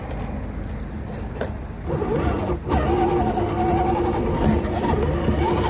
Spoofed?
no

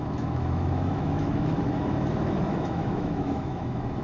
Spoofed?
yes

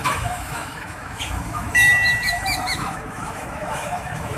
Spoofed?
yes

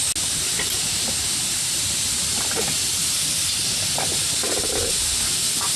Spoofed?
no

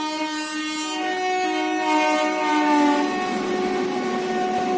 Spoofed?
no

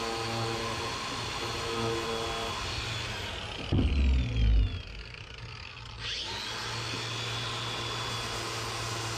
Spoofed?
no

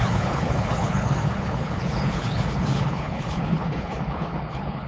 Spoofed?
yes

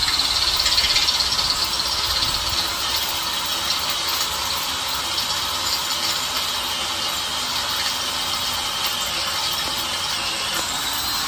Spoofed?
no